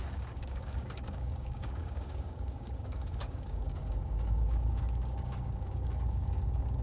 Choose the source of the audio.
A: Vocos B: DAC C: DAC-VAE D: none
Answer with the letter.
B